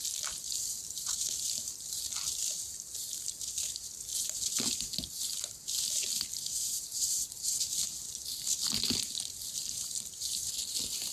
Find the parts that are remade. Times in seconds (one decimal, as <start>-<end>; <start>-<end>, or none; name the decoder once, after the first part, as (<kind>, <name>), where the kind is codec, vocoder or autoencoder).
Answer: none